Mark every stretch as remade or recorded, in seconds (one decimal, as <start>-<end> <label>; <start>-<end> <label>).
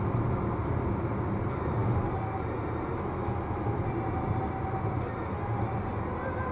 0.0-6.5 recorded